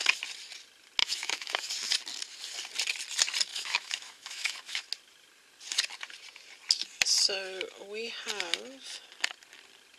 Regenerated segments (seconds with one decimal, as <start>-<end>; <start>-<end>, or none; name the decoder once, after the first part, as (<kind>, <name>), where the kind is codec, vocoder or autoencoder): 1.0-1.7 (autoencoder, DAC-VAE); 3.5-4.8